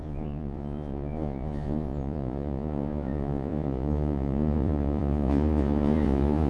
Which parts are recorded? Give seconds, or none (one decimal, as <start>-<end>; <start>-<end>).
none